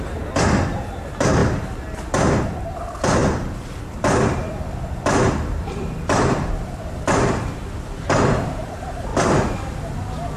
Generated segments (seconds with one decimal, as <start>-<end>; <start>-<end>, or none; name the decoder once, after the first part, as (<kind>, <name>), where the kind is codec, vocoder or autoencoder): 3.2-7.6 (vocoder, BigVGAN v2)